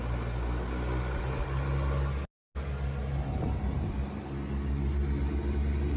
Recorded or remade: recorded